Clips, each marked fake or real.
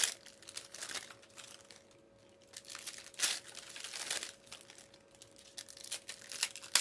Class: real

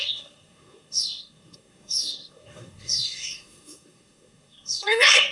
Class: fake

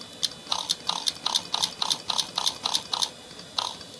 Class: real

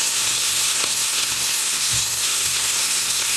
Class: fake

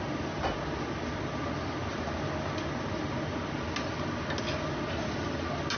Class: real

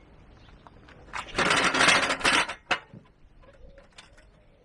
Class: real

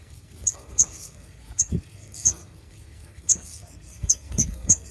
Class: fake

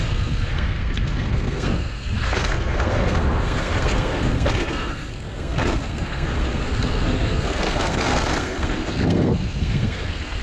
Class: fake